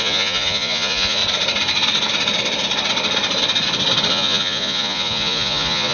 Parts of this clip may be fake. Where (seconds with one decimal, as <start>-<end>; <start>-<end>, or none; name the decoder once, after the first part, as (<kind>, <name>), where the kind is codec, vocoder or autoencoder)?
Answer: 0.0-1.2 (vocoder, Vocos); 4.1-5.9